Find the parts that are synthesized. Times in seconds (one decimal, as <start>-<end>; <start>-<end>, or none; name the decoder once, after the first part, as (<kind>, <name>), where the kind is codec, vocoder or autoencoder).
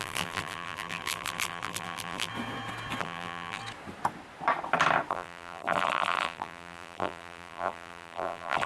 0.0-2.3 (vocoder, BigVGAN v2); 3.0-3.6; 5.1-8.7